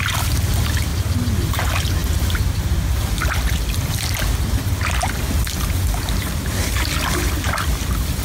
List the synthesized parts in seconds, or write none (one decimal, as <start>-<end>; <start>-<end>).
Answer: none